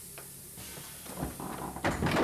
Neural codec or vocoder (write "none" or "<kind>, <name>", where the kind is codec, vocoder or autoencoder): vocoder, BigVGAN v2